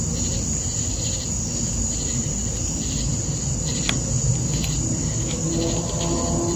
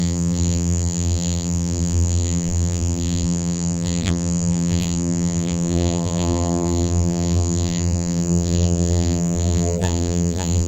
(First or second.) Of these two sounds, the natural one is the first